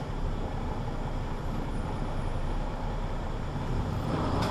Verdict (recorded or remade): remade